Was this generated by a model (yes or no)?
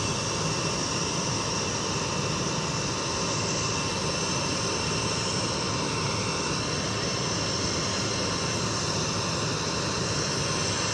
no